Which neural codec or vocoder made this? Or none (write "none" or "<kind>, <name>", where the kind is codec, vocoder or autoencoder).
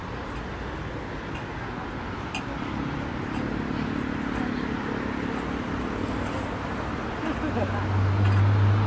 none